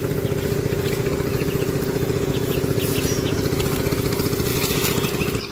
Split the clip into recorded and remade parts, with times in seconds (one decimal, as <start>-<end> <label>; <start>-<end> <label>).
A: 0.0-1.3 recorded; 1.3-3.9 remade; 3.9-4.5 recorded; 4.5-5.1 remade; 5.1-5.5 recorded